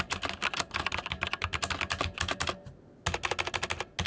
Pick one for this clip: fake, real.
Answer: real